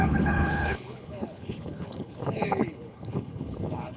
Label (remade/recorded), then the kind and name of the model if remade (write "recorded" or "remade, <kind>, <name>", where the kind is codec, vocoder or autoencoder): remade, codec, HILCodec